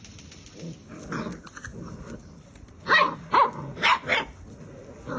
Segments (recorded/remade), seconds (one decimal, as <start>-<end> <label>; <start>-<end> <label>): 0.0-5.2 recorded